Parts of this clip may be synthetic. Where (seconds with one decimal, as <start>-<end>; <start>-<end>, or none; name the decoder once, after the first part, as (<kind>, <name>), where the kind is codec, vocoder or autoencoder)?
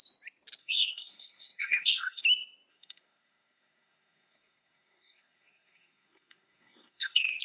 0.6-2.2 (codec, SNAC); 2.7-7.4